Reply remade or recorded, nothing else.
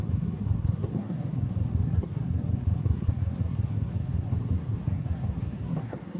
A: remade